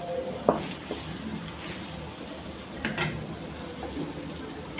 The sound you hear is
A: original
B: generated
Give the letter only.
A